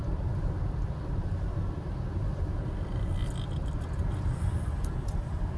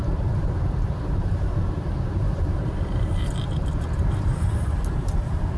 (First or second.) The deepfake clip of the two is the second